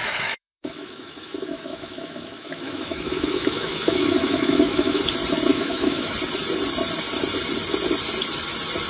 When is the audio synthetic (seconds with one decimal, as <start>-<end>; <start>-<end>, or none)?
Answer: 0.0-5.0; 5.5-6.1